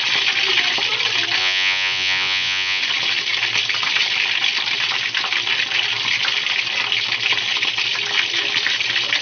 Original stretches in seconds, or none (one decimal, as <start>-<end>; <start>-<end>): 0.0-1.4; 2.8-9.2